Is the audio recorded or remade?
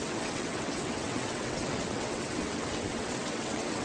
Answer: remade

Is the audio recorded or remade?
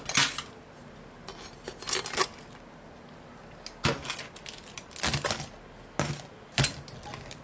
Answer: recorded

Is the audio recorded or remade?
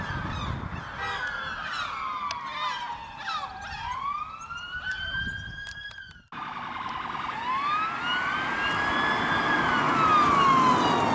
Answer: recorded